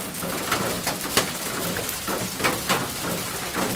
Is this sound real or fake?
real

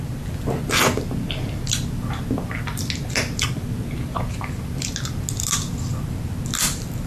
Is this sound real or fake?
real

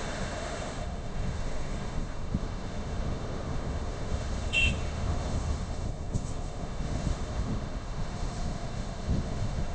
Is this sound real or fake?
fake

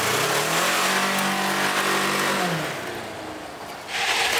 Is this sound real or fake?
real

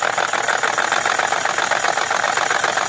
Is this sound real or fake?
real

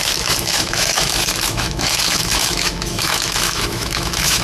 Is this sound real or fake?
fake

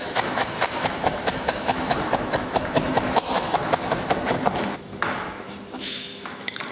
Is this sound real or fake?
fake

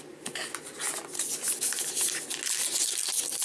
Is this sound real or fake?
real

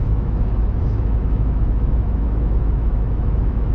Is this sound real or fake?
fake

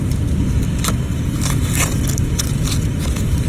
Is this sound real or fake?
real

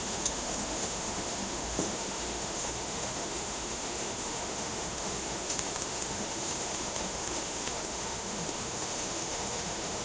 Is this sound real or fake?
fake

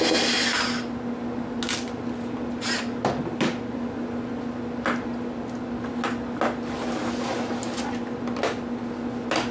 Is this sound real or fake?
real